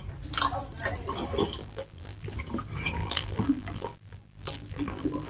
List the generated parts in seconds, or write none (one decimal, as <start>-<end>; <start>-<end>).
1.6-2.3; 3.0-5.3